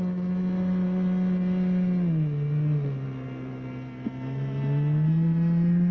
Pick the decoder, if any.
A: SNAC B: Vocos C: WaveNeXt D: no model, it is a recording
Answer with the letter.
D